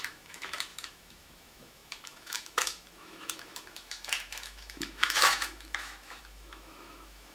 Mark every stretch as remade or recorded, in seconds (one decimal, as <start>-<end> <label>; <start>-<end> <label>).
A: 0.0-7.3 remade